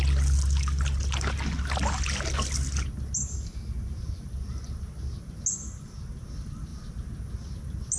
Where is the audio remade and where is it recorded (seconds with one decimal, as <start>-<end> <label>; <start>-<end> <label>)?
0.0-8.0 recorded